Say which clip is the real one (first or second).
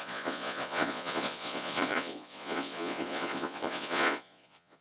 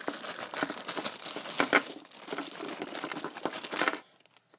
second